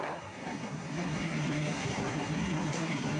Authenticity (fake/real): fake